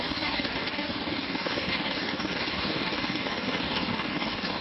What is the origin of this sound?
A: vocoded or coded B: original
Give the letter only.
A